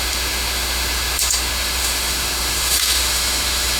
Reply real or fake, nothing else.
fake